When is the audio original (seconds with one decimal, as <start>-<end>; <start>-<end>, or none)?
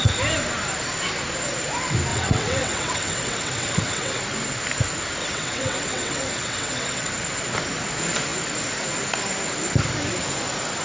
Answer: 0.0-2.1; 4.2-5.2; 7.1-10.8